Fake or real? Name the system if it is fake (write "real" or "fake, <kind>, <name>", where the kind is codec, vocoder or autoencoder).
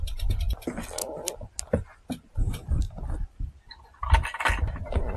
real